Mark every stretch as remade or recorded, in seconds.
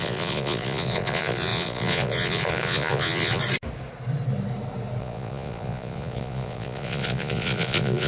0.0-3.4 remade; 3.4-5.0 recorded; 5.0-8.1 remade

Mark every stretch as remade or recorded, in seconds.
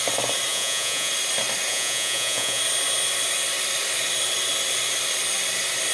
0.0-0.5 recorded; 0.5-1.1 remade; 1.1-1.7 recorded; 1.7-2.6 remade; 2.6-5.9 recorded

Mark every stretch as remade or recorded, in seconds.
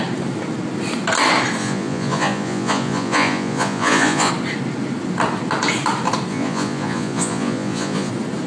0.0-1.6 recorded; 1.6-4.3 remade; 4.3-6.3 recorded; 6.3-8.1 remade; 8.1-8.5 recorded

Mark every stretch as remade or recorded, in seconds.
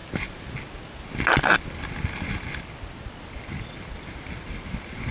0.0-5.1 recorded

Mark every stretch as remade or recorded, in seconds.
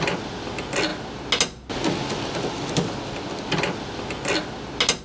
0.0-5.0 recorded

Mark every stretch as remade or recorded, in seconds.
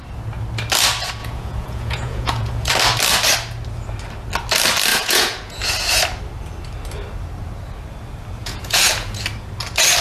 0.0-1.2 recorded; 1.2-2.7 remade; 2.7-4.9 recorded; 4.9-5.6 remade; 5.6-8.4 recorded; 8.4-9.2 remade; 9.2-10.0 recorded